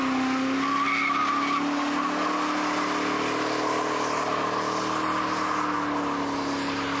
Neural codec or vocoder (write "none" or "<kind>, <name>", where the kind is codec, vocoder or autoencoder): none